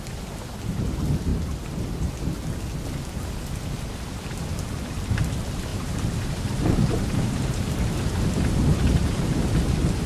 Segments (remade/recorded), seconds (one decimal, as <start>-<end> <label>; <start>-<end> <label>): 0.0-1.3 recorded; 1.3-2.1 remade; 2.1-5.7 recorded; 5.7-10.1 remade